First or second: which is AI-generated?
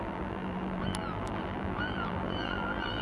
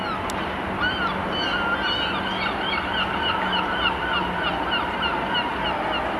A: first